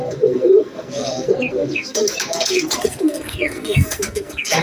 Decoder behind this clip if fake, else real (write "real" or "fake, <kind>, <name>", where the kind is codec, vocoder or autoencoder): fake, codec, SNAC